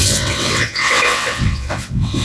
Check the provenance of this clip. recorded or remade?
remade